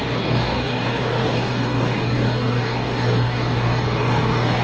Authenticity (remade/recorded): remade